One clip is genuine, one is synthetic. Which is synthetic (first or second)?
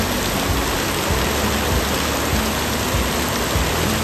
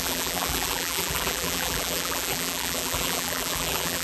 second